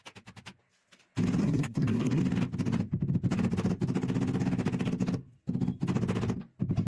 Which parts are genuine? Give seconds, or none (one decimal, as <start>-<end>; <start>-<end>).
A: 0.0-1.4; 2.2-6.9